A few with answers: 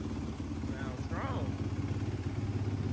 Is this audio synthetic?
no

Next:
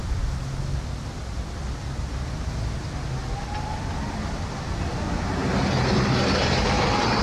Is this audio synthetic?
no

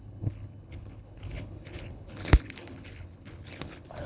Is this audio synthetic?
yes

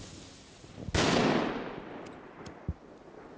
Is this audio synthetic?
no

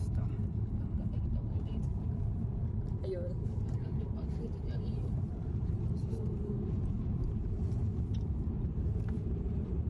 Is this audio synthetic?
yes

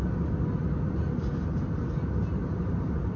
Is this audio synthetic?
no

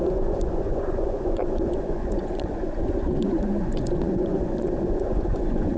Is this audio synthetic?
yes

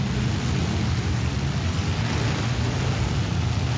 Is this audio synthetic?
no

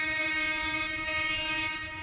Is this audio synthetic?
yes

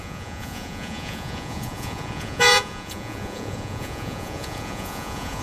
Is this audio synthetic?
yes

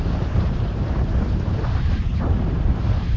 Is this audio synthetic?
yes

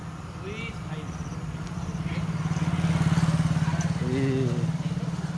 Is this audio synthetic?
no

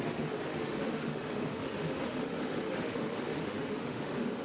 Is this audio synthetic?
yes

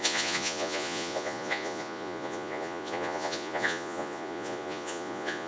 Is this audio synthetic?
yes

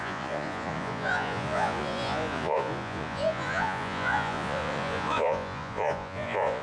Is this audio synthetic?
yes